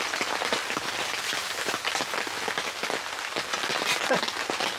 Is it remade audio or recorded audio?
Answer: recorded